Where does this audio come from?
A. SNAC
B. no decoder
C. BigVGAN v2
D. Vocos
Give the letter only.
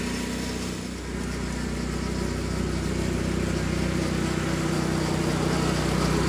B